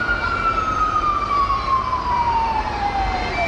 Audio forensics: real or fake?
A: fake